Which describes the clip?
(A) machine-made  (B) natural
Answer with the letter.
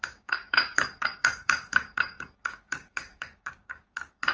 A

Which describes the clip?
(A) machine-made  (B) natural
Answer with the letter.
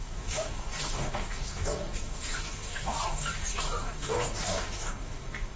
A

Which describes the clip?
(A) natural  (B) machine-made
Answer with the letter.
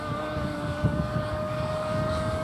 B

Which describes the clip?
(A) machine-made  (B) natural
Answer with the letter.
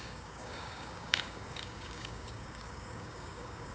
A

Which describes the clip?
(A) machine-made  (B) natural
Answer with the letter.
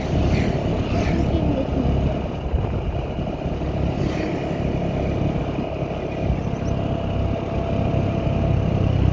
B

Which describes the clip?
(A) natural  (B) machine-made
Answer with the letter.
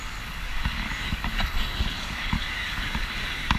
B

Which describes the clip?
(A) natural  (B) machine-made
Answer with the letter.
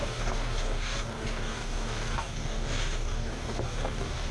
B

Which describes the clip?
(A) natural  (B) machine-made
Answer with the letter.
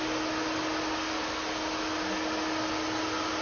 A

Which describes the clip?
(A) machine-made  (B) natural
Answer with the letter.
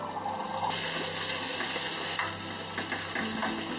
B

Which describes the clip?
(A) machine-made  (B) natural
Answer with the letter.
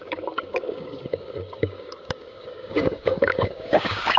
A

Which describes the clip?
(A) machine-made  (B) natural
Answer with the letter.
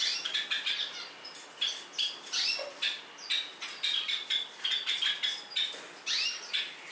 B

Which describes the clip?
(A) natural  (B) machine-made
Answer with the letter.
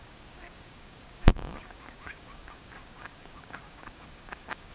B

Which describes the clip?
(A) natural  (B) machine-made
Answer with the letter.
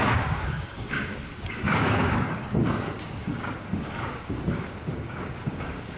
B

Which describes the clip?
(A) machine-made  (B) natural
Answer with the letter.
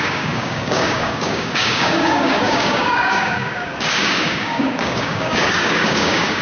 A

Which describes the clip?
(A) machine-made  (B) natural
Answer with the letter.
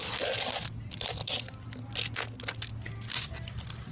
B